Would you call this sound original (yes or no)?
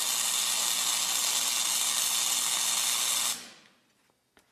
yes